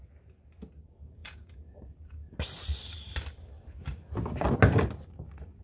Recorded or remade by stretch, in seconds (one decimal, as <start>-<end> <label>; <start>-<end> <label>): 0.0-1.2 recorded; 1.2-1.8 remade; 1.8-5.6 recorded